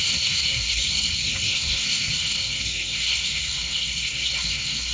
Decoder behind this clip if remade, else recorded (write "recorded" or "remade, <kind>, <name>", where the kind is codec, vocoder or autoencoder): remade, codec, SNAC